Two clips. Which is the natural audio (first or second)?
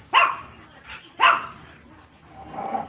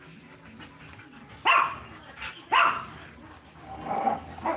second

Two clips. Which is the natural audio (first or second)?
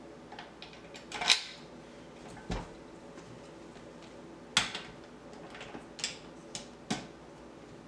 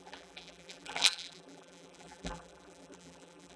first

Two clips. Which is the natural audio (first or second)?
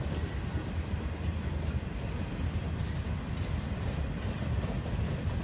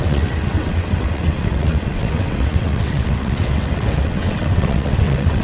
first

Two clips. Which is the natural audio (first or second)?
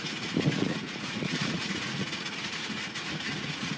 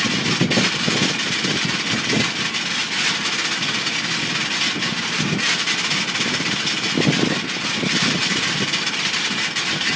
second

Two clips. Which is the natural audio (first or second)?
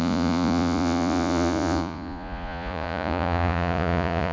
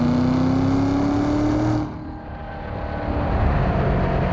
second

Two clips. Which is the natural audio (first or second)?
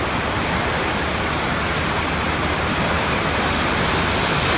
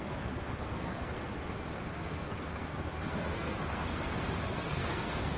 first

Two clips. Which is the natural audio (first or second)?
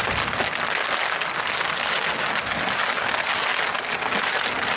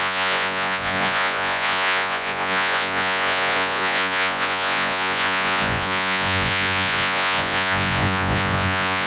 first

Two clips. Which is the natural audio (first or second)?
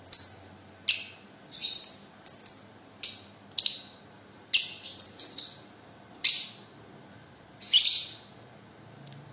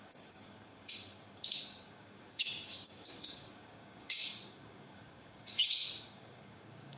first